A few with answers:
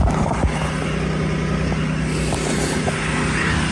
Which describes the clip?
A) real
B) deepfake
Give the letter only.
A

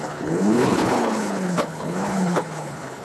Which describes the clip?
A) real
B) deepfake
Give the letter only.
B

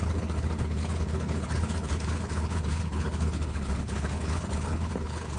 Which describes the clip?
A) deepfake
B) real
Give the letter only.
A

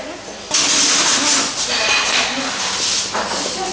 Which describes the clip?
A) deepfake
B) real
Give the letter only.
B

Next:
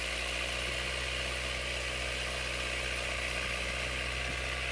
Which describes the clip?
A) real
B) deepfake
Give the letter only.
A